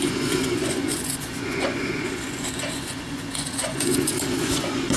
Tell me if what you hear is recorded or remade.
remade